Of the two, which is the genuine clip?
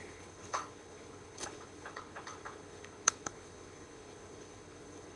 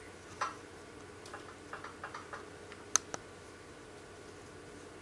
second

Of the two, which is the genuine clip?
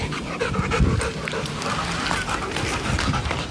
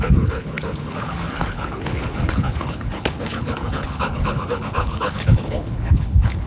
first